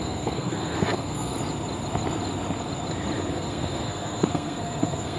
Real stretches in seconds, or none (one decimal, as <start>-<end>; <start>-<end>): 1.3-3.3

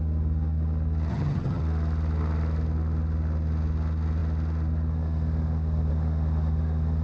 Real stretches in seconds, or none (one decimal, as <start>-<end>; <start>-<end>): 0.0-1.1; 1.6-7.0

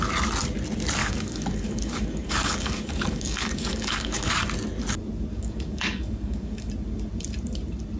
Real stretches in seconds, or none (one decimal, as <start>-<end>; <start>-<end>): 0.0-1.0; 4.3-5.3; 6.7-8.0

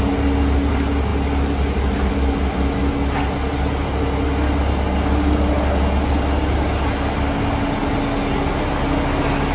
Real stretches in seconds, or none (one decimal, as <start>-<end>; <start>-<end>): 0.0-9.5

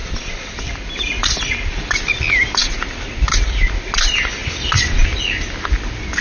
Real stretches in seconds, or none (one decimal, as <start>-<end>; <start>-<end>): 0.0-6.2

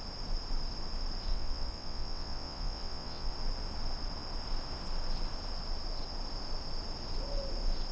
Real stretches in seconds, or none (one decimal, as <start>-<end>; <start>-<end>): 0.0-1.3; 3.3-7.9

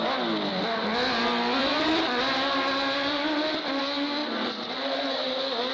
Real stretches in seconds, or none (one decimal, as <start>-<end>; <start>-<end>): 0.0-0.5; 3.8-4.2; 5.1-5.7

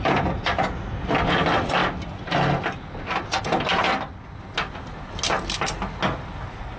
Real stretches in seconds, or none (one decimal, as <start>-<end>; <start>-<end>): 0.0-6.8